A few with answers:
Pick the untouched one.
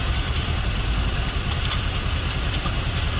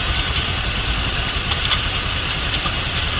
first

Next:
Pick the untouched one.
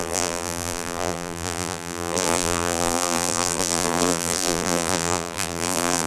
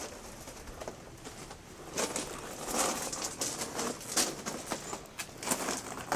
second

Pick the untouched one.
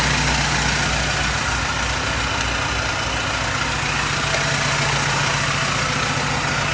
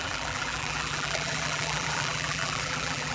first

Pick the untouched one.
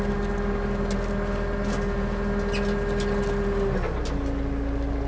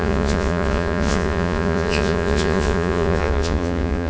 first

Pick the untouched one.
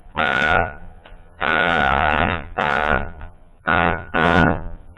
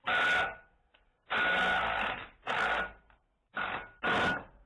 second